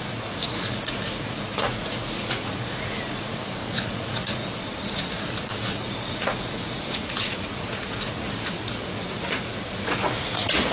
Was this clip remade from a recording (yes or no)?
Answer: yes